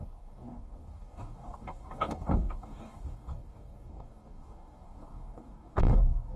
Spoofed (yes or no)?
yes